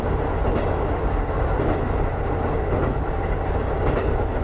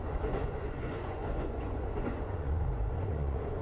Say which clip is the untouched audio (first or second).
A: first